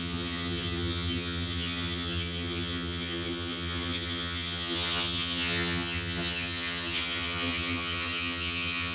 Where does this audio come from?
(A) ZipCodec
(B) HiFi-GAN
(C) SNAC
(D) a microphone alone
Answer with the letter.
B